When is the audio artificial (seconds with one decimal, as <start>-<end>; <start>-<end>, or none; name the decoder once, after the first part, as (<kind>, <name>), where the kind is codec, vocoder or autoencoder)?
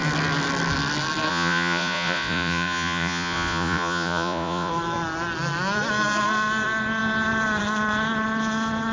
1.3-4.7 (vocoder, Vocos)